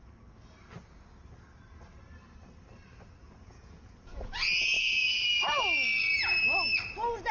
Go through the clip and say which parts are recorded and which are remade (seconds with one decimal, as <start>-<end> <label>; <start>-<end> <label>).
0.0-3.2 recorded; 3.2-5.4 remade; 5.4-7.3 recorded